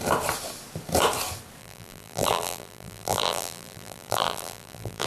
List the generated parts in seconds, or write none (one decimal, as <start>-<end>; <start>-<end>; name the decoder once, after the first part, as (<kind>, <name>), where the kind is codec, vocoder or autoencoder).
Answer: 1.6-5.1 (vocoder, BigVGAN v2)